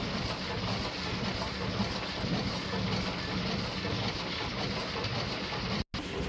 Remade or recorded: recorded